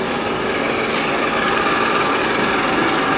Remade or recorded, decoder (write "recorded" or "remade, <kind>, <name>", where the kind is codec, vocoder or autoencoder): recorded